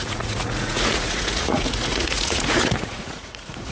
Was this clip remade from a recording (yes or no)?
yes